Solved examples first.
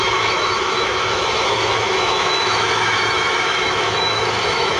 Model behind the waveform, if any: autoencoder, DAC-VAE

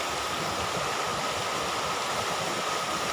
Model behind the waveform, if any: none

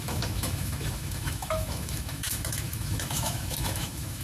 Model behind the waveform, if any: autoencoder, DAC-VAE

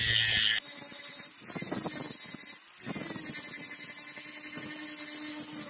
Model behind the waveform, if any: none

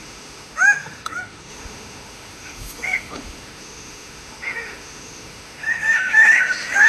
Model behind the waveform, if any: autoencoder, DAC-VAE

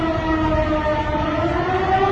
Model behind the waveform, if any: none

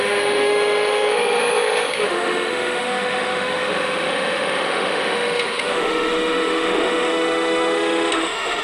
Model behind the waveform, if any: autoencoder, DAC-VAE